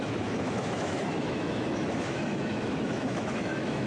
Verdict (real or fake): fake